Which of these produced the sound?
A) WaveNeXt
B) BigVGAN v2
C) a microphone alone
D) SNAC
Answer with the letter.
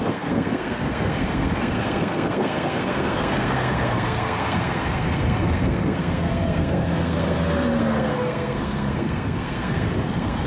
D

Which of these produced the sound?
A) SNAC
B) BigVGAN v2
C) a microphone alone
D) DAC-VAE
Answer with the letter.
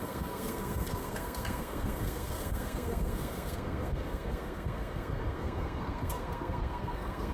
A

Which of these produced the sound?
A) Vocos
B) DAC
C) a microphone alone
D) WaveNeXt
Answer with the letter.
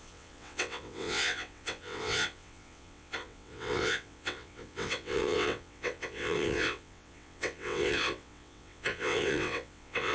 D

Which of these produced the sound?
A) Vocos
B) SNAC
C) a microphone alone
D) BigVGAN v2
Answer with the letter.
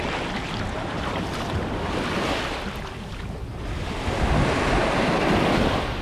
C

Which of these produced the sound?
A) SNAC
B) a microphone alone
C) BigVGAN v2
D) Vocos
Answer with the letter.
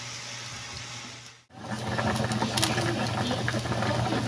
B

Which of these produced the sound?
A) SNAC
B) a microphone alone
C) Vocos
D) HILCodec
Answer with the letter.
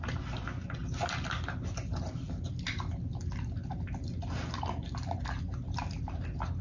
B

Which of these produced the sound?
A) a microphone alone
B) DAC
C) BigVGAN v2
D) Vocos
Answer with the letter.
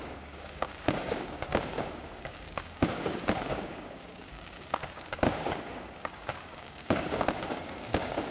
B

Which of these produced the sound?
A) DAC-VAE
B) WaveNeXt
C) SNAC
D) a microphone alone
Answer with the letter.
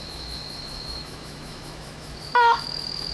A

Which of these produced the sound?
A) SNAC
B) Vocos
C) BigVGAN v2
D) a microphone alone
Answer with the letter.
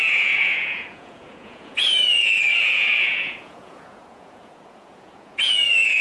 B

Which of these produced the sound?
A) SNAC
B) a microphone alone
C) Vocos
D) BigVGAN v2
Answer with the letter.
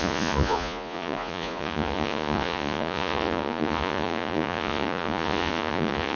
C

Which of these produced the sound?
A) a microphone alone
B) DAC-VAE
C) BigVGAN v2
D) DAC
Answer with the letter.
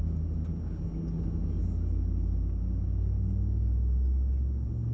A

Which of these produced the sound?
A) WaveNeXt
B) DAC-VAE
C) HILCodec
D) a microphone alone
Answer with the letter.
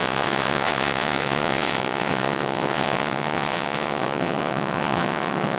A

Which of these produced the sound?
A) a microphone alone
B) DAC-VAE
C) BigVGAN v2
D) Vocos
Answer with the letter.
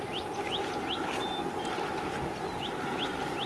A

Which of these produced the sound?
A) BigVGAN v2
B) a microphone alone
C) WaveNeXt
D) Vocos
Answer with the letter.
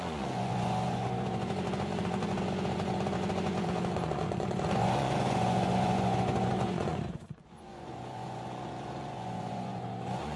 D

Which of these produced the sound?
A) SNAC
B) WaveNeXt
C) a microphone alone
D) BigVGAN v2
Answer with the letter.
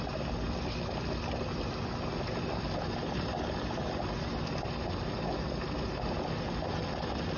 C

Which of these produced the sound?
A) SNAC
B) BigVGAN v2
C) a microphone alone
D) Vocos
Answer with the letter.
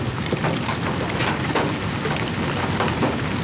C